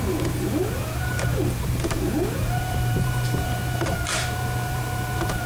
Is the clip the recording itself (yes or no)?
no